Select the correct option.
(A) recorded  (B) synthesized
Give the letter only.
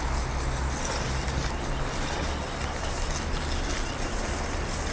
A